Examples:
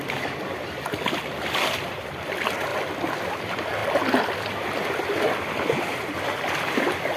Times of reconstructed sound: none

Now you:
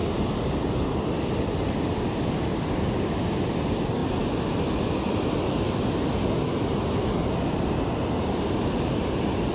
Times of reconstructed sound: none

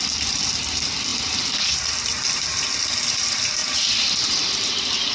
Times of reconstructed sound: none